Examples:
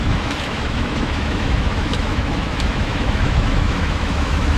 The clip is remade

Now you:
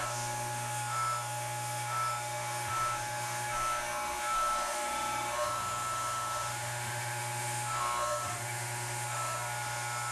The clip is remade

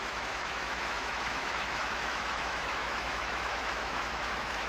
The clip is remade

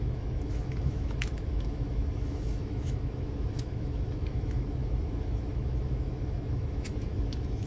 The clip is remade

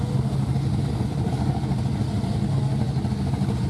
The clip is recorded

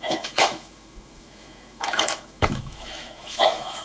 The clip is remade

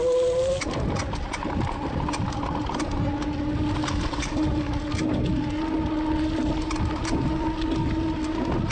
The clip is recorded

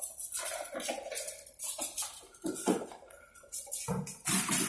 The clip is recorded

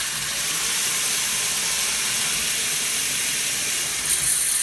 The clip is recorded